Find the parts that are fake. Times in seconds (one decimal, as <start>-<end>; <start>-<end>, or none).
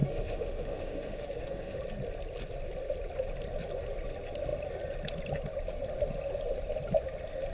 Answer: 0.0-1.8